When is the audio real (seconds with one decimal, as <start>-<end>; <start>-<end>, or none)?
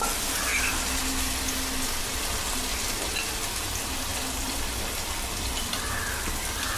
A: 0.5-2.0; 4.1-4.9